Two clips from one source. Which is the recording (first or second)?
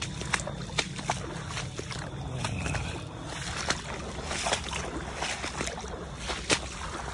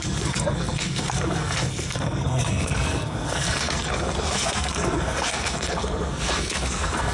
first